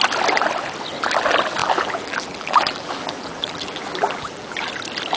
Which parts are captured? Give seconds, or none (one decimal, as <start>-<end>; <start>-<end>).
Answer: 0.0-1.6; 4.7-5.2